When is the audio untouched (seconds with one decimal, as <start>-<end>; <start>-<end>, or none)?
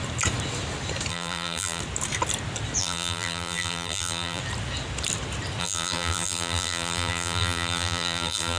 0.0-1.1; 1.8-2.8; 4.4-5.6